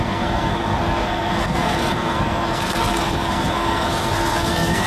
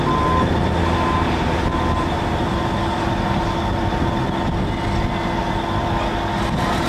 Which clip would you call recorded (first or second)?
second